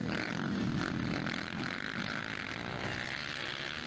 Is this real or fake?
real